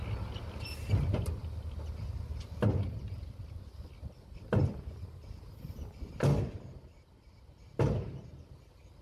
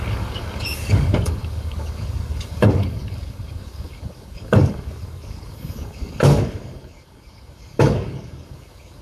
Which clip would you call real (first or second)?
first